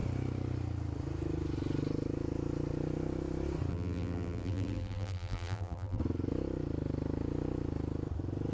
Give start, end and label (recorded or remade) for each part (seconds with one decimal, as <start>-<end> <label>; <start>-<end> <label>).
0.0-3.7 recorded; 3.7-6.0 remade; 6.0-8.5 recorded